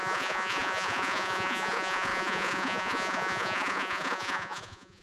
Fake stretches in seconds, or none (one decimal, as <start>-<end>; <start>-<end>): 0.0-5.0